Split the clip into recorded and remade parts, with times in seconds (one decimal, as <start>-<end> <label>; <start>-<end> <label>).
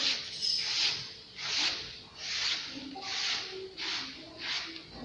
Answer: 0.0-5.0 recorded